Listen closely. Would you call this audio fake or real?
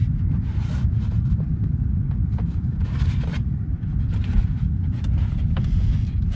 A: fake